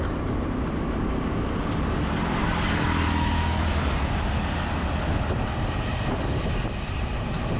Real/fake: real